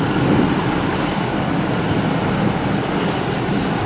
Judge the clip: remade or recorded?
recorded